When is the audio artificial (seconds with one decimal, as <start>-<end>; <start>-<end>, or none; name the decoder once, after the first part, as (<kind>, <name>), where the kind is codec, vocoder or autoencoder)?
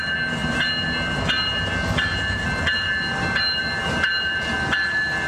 none